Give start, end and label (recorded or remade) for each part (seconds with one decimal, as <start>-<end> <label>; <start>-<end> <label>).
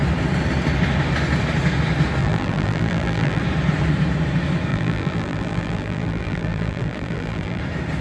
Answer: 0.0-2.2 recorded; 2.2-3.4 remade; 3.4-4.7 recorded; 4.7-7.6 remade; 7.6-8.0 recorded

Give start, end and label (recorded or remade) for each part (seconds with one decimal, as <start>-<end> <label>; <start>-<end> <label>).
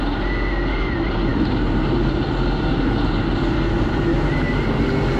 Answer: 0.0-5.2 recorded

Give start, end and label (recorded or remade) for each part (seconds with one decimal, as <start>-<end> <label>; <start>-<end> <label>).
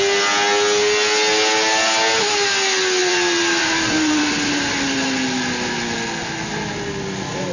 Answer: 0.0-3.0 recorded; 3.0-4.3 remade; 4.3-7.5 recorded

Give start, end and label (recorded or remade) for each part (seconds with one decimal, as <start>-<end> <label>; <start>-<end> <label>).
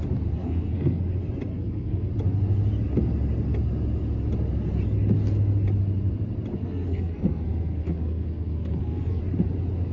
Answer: 0.0-0.4 recorded; 0.4-1.0 remade; 1.0-1.5 recorded; 1.5-2.1 remade; 2.1-6.6 recorded; 6.6-9.2 remade; 9.2-9.9 recorded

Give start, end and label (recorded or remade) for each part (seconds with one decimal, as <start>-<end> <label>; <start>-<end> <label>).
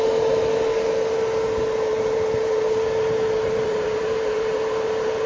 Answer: 0.0-1.9 recorded; 1.9-5.3 remade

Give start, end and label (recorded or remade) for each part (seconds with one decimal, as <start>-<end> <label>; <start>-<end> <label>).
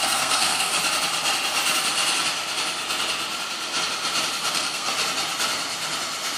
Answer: 0.0-0.7 remade; 0.7-4.5 recorded; 4.5-4.9 remade; 4.9-6.4 recorded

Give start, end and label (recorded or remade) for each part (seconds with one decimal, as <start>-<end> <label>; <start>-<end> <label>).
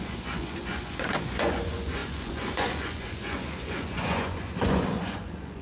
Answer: 0.0-5.6 remade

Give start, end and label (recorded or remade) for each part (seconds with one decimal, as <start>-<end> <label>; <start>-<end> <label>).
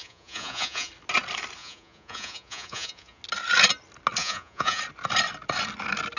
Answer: 0.0-0.9 remade; 0.9-1.6 recorded; 1.6-3.2 remade; 3.2-4.2 recorded; 4.2-4.8 remade; 4.8-6.2 recorded